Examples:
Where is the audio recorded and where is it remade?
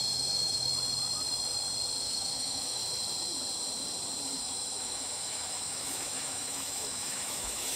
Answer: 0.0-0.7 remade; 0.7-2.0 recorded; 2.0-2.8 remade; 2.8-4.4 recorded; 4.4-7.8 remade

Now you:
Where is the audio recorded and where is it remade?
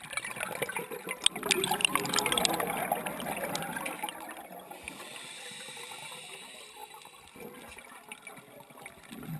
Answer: 0.0-9.4 recorded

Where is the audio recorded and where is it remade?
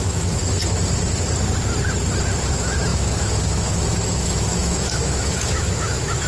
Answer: 0.0-0.4 remade; 0.4-2.4 recorded; 2.4-6.3 remade